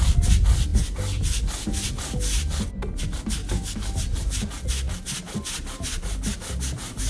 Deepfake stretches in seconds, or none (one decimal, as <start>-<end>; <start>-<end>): 3.4-3.9